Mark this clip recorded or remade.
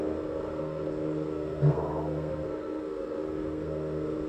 remade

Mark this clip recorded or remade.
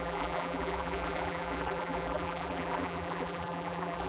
remade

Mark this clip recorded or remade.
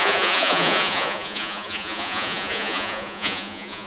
remade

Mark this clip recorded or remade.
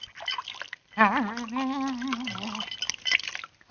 recorded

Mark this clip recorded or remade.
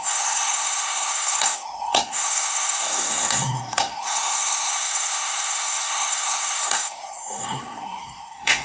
remade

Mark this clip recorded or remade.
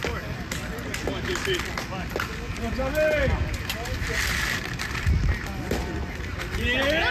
recorded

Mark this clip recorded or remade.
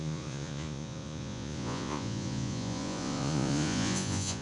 remade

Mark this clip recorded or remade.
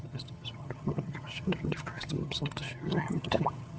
remade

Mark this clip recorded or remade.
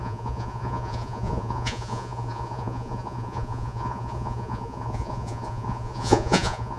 remade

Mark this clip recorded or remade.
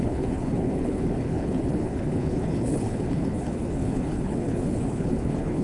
remade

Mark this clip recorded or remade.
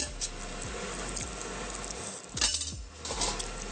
recorded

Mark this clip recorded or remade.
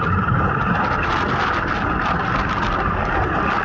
recorded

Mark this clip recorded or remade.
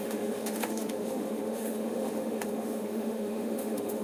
remade